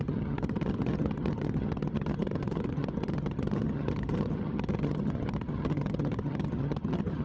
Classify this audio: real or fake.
fake